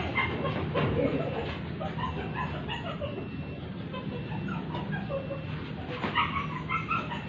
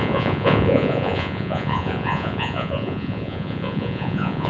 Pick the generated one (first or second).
second